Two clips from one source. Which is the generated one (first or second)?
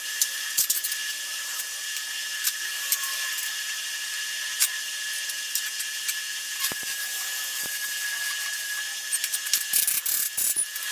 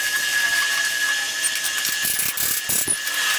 first